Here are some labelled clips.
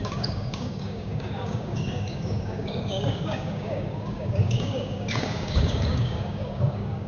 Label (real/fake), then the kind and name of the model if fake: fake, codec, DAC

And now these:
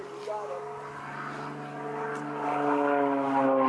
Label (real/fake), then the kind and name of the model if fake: real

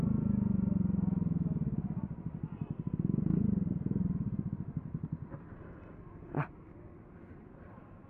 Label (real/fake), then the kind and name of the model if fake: real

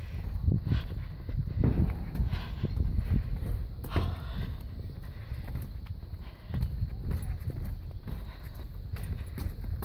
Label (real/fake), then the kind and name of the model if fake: real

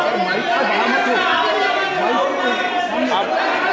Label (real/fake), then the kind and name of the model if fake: real